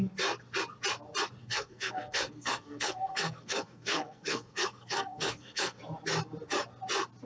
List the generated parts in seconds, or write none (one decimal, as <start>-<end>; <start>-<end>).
1.4-5.8